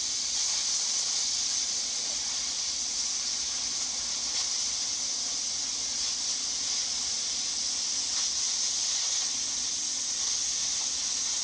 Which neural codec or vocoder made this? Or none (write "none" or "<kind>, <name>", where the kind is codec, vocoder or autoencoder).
none